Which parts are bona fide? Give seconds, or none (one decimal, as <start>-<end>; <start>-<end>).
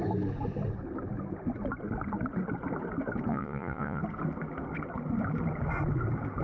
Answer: 0.0-3.3; 4.0-6.4